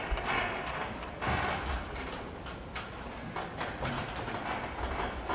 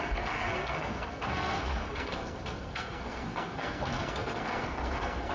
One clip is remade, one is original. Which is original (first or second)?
first